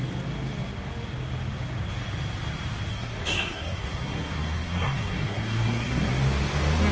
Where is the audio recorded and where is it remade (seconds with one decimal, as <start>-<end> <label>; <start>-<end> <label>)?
0.0-2.9 recorded; 2.9-6.1 remade; 6.1-6.9 recorded